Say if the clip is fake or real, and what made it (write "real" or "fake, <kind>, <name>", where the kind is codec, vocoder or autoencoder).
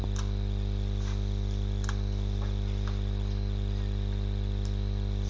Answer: real